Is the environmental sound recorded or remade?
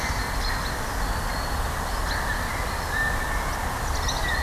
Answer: recorded